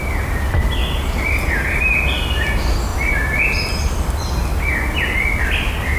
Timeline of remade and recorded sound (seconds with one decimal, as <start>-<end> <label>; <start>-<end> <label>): 0.0-6.0 recorded